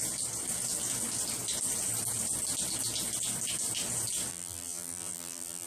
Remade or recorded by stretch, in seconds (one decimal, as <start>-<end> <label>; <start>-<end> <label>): 0.0-4.3 recorded; 4.3-5.7 remade

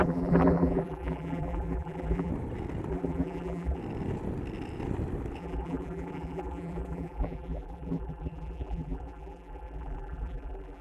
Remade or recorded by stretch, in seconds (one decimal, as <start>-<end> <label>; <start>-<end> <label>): 0.0-2.3 remade; 2.3-2.9 recorded; 2.9-3.8 remade; 3.8-5.4 recorded; 5.4-10.8 remade

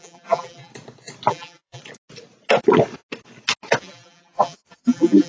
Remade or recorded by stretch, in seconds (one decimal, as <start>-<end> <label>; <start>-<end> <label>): 0.0-0.7 remade; 0.7-1.3 recorded; 1.3-1.8 remade; 1.8-3.8 recorded; 3.8-5.3 remade

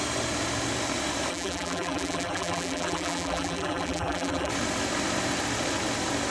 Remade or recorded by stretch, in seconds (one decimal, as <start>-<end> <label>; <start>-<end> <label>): 0.0-1.3 recorded; 1.3-4.5 remade; 4.5-6.3 recorded